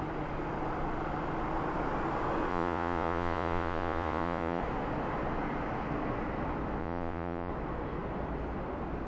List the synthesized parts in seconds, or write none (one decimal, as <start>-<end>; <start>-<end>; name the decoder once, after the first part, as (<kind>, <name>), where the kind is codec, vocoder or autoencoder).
2.5-4.6 (vocoder, Vocos); 6.8-7.5